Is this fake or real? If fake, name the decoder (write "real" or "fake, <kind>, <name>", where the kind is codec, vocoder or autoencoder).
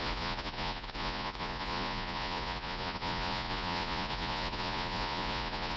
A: fake, vocoder, Vocos